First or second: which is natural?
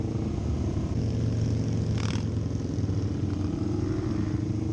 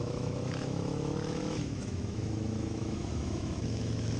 first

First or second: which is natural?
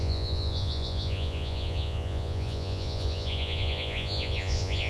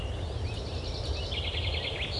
second